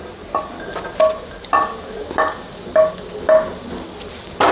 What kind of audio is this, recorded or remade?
recorded